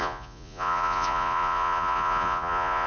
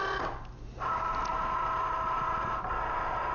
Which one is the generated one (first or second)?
first